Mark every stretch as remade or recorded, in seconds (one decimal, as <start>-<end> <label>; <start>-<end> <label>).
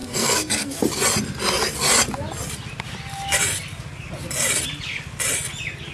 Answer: 0.0-0.8 remade; 0.8-5.9 recorded